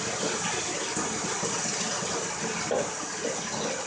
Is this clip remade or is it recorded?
recorded